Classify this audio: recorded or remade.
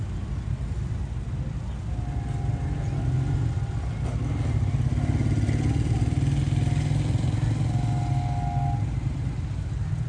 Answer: recorded